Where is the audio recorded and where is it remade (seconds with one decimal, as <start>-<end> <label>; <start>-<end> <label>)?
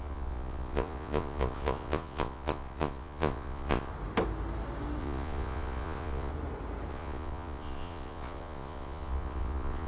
0.0-3.9 remade; 3.9-5.0 recorded; 5.0-6.3 remade; 6.3-6.9 recorded; 6.9-9.9 remade